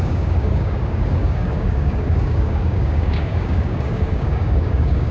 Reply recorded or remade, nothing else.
remade